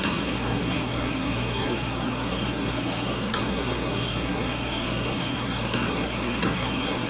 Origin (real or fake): fake